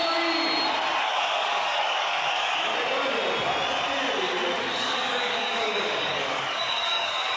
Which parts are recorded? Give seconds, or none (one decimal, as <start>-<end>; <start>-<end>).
0.0-1.0; 2.7-4.6